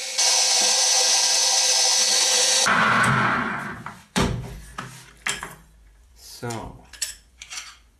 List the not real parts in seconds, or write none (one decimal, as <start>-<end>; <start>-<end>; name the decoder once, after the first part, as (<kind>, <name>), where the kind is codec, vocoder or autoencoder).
0.0-1.4 (vocoder, Vocos); 2.1-4.7; 5.4-8.0